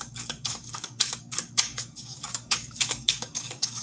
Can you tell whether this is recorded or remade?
remade